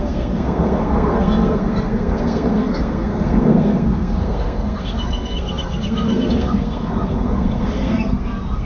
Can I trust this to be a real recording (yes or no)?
no